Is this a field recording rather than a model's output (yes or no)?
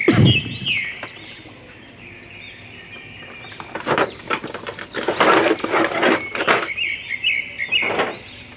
yes